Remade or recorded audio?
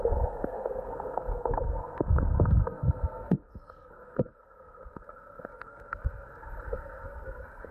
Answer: remade